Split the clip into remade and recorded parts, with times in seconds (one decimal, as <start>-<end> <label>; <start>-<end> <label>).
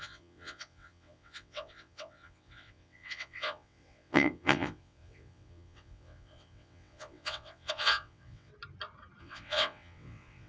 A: 0.0-8.5 remade; 8.5-9.2 recorded; 9.2-10.5 remade